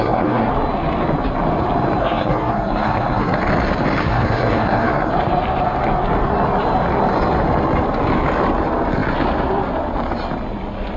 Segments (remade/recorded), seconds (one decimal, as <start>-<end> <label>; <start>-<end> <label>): 0.0-0.5 remade; 0.5-2.0 recorded; 2.0-3.4 remade; 3.4-4.0 recorded; 4.0-5.1 remade; 5.1-11.0 recorded